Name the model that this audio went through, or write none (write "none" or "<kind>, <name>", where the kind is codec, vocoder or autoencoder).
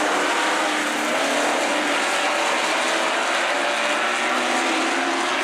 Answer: none